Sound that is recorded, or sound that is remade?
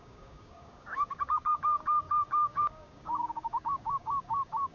remade